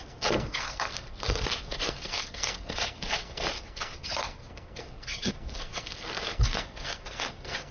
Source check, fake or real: fake